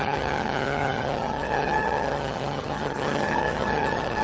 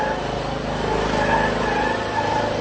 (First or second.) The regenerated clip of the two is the first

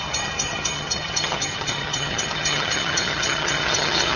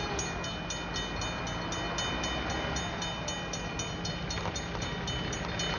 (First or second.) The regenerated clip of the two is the first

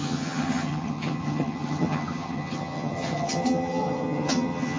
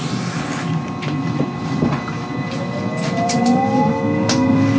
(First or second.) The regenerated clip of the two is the first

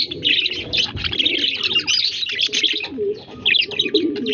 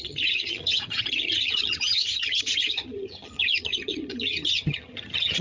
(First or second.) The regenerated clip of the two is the second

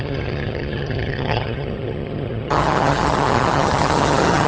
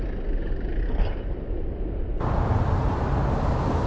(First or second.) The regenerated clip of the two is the first